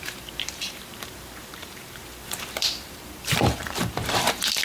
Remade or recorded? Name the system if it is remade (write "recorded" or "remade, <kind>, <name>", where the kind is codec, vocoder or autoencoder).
remade, vocoder, BigVGAN v2